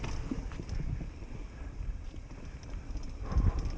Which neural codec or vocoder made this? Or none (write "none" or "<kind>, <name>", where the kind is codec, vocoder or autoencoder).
none